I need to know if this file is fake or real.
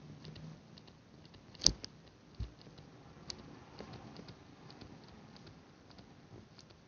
real